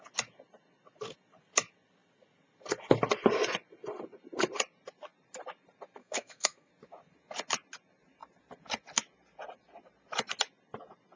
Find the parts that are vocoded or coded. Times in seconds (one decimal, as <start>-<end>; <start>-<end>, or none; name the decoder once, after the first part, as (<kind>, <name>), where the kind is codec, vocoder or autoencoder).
6.0-6.7 (codec, SNAC)